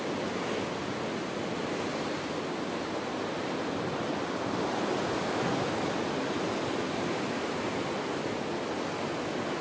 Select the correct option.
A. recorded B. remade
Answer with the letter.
A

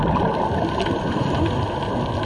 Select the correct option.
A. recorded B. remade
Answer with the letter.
A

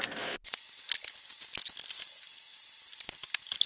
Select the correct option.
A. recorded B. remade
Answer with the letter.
A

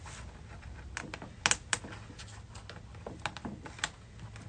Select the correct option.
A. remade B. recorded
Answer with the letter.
B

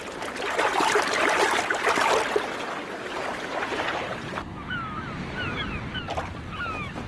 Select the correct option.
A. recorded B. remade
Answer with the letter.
A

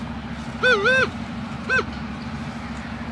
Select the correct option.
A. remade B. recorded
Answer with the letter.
B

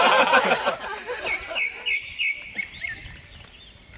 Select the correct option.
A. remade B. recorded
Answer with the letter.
B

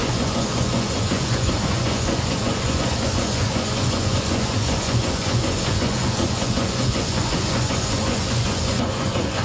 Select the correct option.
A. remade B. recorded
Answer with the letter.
A